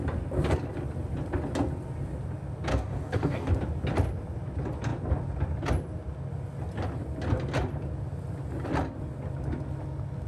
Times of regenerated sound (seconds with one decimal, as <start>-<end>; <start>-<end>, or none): 2.7-3.5